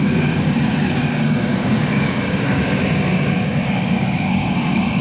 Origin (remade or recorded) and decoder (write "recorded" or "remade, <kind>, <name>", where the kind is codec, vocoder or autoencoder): remade, codec, DAC